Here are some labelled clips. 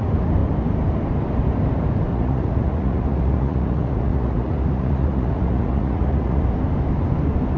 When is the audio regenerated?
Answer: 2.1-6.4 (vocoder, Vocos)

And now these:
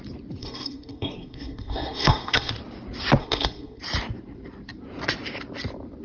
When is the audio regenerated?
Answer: 0.4-2.5 (codec, SNAC); 3.2-3.8

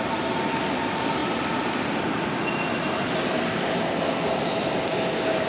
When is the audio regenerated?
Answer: none

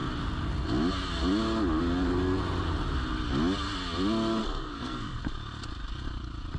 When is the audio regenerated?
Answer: 4.4-5.2 (codec, SNAC)

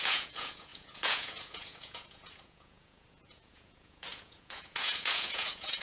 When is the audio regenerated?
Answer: 0.0-5.8 (vocoder, Vocos)